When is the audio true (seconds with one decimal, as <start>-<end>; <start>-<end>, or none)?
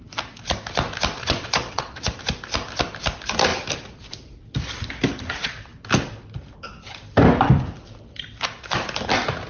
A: 0.0-1.2; 2.2-9.5